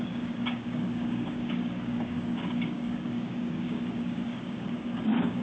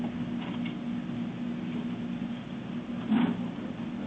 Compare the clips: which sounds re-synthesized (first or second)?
first